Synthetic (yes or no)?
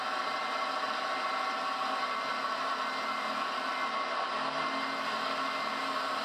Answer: no